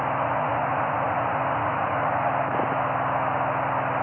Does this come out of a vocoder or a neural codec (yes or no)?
no